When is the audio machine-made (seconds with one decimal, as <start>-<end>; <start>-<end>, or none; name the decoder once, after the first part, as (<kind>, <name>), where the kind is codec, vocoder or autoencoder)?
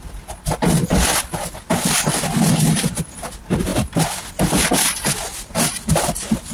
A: 0.0-3.7 (vocoder, BigVGAN v2); 4.3-6.5